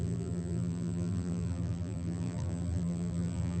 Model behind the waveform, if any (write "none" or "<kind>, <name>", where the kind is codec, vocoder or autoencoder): vocoder, BigVGAN v2